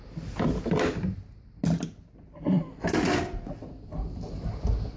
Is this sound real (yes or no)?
yes